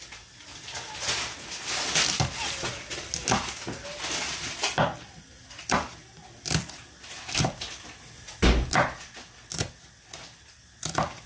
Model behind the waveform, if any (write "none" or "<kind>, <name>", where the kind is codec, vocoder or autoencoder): none